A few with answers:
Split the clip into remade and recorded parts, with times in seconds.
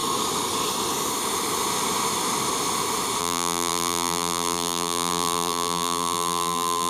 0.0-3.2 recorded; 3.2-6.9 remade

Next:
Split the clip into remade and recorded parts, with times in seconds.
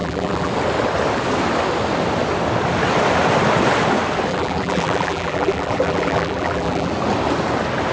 0.0-0.5 remade; 0.5-4.3 recorded; 4.3-6.9 remade; 6.9-7.9 recorded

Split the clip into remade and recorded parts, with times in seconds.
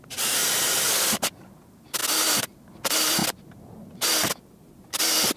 0.0-5.4 recorded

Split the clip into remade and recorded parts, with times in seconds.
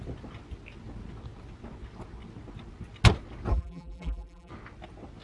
0.0-3.5 recorded; 3.5-4.5 remade; 4.5-5.2 recorded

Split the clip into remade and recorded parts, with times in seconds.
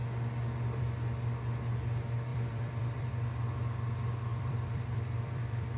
0.0-2.3 recorded; 2.3-3.1 remade; 3.1-4.3 recorded; 4.3-5.8 remade